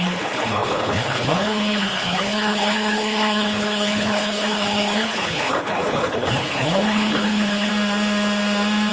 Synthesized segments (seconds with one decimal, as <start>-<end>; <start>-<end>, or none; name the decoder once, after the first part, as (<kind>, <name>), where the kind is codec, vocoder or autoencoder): 0.0-7.7 (codec, HILCodec)